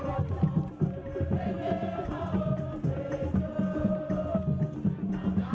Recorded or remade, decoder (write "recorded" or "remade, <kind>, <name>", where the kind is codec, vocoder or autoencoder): recorded